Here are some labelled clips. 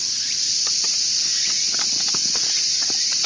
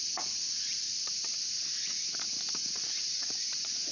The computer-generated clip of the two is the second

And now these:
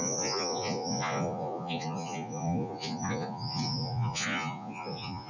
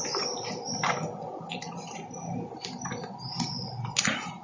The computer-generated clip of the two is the first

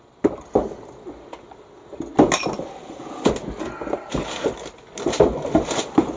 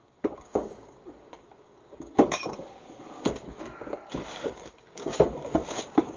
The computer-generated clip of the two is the second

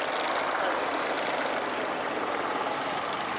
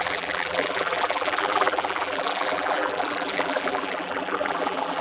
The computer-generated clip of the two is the second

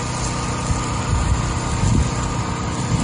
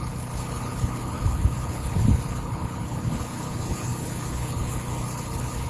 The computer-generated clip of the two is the second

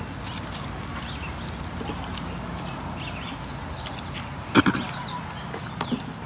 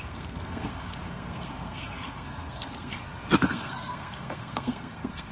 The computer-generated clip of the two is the second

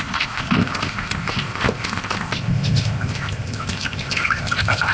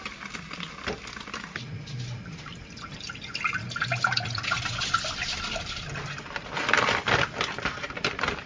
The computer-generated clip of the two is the first